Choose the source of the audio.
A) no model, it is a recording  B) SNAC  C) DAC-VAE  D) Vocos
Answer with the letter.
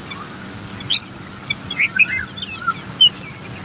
A